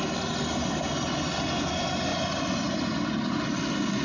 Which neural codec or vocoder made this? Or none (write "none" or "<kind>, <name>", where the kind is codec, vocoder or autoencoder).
none